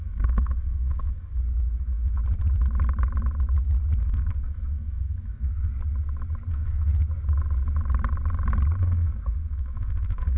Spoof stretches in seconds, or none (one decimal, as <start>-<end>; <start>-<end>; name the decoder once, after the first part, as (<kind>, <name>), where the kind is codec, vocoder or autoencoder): 0.0-1.3 (codec, SNAC); 1.8-2.2; 4.0-5.7; 6.5-6.9; 8.8-10.4